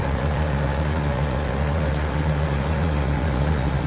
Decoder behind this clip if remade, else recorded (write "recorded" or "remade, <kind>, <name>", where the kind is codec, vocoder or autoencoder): remade, vocoder, Vocos